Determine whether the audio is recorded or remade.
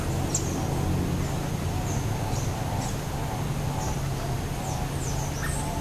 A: recorded